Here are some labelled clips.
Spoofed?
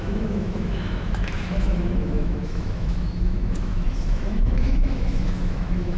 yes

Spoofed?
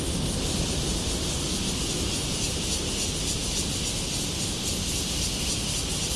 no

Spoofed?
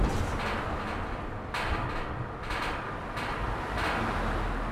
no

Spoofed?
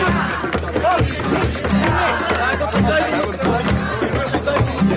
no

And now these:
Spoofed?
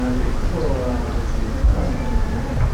no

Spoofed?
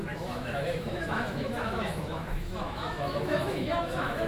yes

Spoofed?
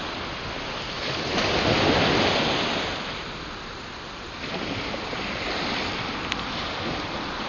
no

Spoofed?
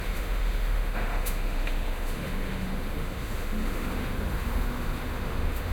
yes